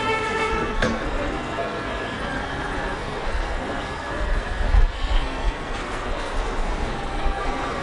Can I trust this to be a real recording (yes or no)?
no